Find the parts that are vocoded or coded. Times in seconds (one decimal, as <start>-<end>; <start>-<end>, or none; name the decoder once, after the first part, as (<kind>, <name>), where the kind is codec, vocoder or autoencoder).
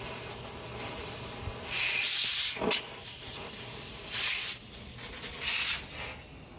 3.0-3.5 (vocoder, Vocos)